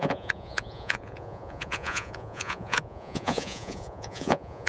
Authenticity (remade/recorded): remade